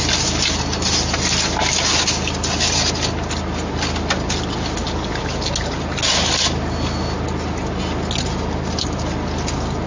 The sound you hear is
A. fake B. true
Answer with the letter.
B